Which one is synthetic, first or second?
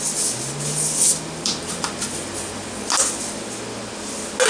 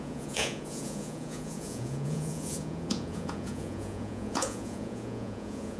second